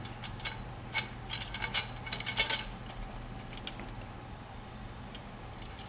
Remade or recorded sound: recorded